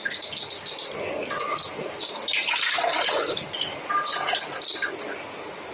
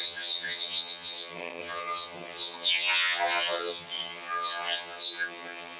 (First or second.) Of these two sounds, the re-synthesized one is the second